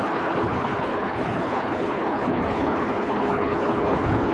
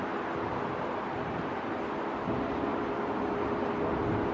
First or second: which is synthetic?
first